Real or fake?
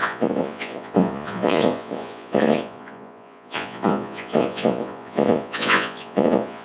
fake